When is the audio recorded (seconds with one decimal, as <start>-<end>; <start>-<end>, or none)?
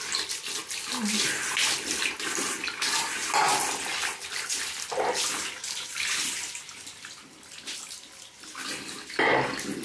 0.0-9.8